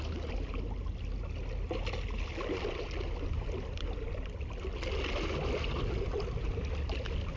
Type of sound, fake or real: real